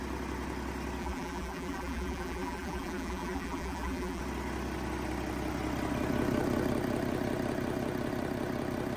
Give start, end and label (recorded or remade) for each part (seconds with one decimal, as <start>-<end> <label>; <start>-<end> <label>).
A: 0.0-1.0 recorded; 1.0-4.2 remade; 4.2-9.0 recorded